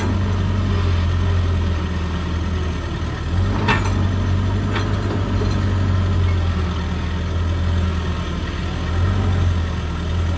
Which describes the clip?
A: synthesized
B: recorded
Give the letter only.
B